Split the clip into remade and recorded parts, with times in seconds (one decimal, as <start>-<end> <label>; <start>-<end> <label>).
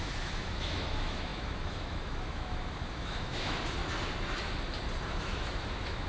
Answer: 0.0-3.8 remade; 3.8-5.1 recorded; 5.1-6.1 remade